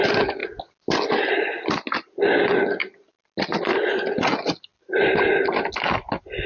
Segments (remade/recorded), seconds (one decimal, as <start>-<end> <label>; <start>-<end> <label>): 0.0-6.5 recorded